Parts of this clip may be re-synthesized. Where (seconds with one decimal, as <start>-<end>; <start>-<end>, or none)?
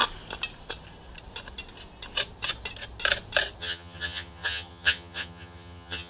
3.6-6.1